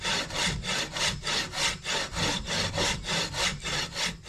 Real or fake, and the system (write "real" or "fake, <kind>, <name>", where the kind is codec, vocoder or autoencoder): real